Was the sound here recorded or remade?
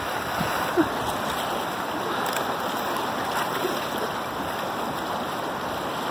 recorded